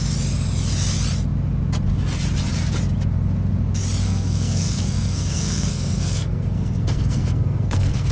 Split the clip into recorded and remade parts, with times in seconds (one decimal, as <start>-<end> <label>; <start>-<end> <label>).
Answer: 0.0-4.0 recorded; 4.0-8.1 remade